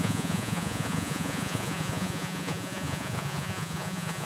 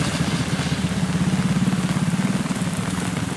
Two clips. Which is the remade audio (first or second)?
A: first